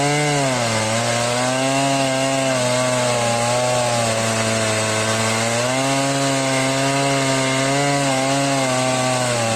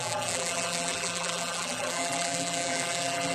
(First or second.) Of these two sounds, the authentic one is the first